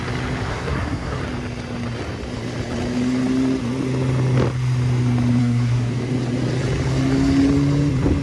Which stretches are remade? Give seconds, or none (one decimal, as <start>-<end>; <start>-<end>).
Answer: 0.5-1.2; 5.4-5.9